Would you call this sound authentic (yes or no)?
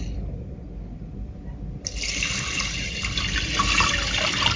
yes